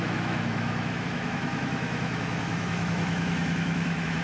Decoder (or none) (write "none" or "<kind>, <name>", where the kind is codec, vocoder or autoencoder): autoencoder, DAC-VAE